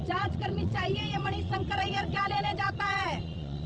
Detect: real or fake fake